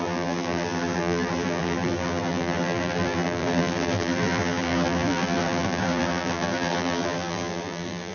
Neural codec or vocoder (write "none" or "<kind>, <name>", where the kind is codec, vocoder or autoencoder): vocoder, BigVGAN v2